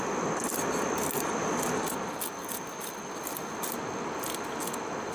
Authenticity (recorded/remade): recorded